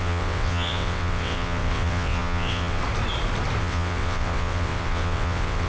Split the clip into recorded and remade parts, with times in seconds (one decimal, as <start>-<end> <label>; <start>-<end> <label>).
0.0-2.8 remade; 2.8-3.6 recorded; 3.6-5.7 remade